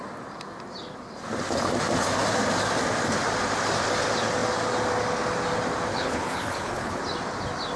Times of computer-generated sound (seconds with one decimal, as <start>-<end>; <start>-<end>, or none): 5.9-7.0

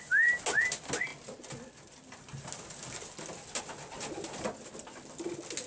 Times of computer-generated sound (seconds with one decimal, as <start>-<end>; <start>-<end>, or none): none

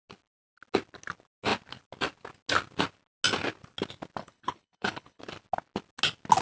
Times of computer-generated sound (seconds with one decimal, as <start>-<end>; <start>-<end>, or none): 4.2-5.2

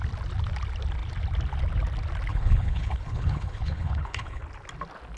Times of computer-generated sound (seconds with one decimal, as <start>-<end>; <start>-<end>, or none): 2.3-4.4